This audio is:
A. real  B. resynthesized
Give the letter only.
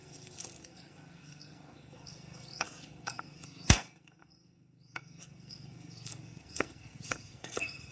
B